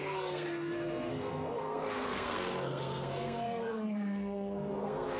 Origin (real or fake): fake